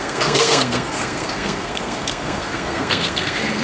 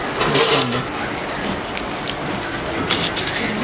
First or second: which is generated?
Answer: first